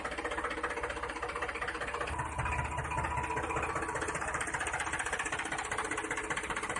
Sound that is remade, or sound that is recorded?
remade